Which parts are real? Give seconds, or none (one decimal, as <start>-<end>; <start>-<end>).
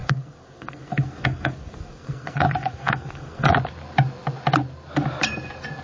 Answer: 3.5-5.8